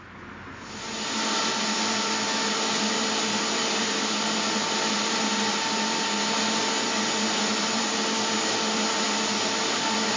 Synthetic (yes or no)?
no